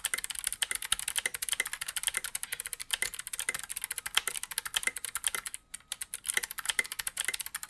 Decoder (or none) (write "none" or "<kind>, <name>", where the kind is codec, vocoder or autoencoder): none